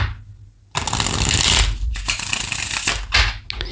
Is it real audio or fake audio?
real